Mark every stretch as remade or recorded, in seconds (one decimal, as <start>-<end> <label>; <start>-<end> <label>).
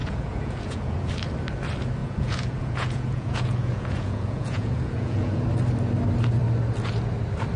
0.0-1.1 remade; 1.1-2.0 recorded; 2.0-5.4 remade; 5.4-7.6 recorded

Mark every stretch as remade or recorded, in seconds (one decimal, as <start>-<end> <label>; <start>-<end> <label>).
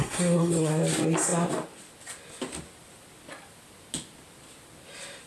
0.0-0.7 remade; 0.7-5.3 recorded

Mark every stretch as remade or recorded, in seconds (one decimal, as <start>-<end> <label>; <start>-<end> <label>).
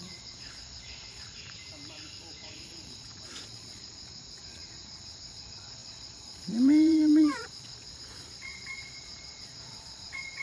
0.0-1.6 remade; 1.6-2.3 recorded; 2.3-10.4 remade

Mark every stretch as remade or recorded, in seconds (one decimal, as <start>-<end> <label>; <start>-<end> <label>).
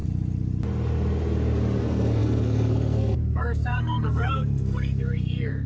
0.0-1.8 recorded; 1.8-5.7 remade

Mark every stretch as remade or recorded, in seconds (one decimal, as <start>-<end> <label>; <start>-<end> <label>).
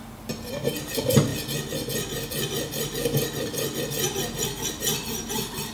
0.0-5.7 recorded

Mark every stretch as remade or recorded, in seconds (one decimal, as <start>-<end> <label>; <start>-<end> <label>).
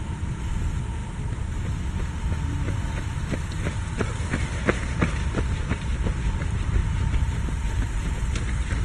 0.0-6.8 recorded; 6.8-8.3 remade; 8.3-8.8 recorded